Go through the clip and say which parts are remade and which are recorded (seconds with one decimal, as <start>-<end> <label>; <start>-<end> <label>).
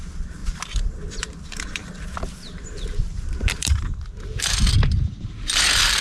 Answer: 0.0-0.4 remade; 0.4-1.2 recorded; 1.2-6.0 remade